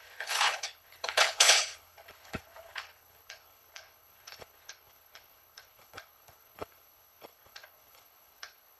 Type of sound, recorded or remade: remade